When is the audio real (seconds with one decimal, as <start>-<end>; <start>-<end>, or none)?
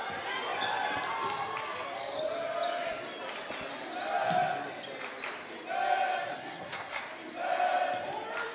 0.0-6.3; 7.0-8.5